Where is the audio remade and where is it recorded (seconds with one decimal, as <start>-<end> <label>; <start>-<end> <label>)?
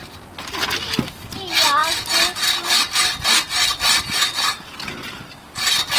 0.0-6.0 recorded